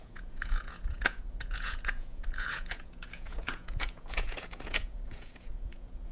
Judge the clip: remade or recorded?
remade